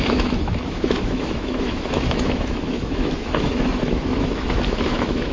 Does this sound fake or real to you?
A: fake